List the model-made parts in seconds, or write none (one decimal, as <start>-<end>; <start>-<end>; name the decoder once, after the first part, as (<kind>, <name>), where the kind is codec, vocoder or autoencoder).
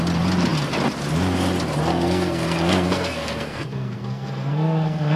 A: 1.9-5.2 (codec, SNAC)